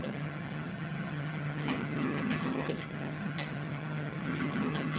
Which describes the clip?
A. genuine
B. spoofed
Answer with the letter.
B